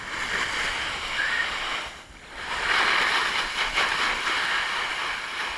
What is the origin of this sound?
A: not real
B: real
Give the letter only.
B